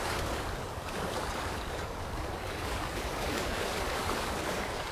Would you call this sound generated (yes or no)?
yes